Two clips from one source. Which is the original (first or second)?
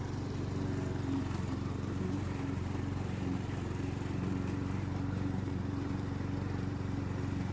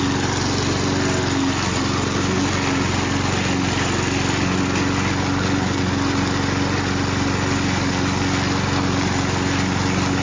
second